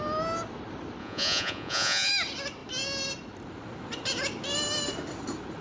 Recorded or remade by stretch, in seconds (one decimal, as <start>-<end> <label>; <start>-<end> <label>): 0.0-1.0 recorded; 1.0-2.1 remade; 2.1-5.6 recorded